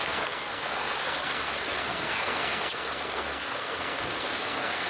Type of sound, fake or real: fake